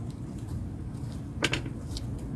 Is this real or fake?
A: real